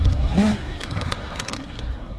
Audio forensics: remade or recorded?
remade